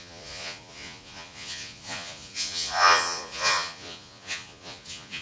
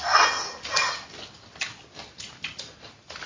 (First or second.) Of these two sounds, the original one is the second